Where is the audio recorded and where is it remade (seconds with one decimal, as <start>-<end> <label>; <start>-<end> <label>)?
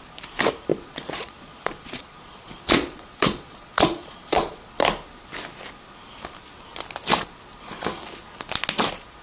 0.0-0.7 recorded; 0.7-4.7 remade; 4.7-9.2 recorded